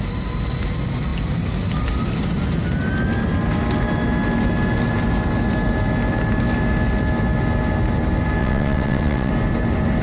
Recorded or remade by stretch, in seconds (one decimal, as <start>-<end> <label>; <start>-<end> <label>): 0.0-8.4 recorded; 8.4-9.3 remade; 9.3-10.0 recorded